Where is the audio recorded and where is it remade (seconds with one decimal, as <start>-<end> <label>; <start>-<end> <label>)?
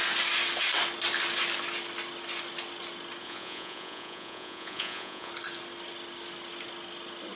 0.0-3.2 recorded; 3.2-5.3 remade; 5.3-7.3 recorded